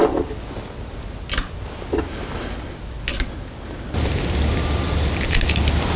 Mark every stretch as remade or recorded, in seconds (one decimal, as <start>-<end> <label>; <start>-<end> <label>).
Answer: 0.0-6.0 recorded